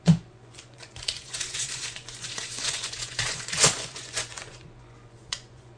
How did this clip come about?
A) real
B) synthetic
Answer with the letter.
B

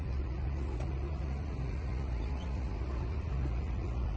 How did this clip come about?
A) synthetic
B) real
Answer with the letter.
A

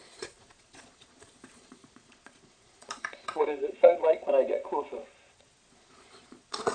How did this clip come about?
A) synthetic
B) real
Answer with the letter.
A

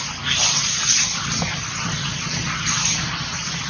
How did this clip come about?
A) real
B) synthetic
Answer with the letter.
A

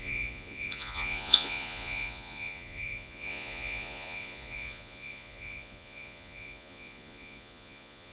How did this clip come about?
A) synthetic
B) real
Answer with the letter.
A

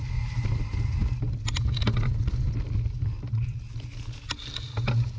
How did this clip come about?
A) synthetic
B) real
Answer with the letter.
B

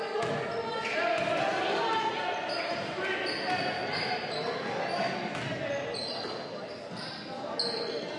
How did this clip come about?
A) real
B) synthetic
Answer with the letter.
A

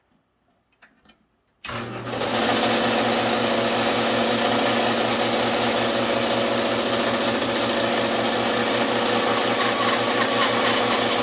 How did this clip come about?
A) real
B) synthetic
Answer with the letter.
A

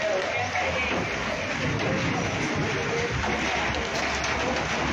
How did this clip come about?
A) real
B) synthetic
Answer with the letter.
A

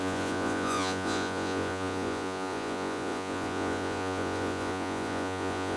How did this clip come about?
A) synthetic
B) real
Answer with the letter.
A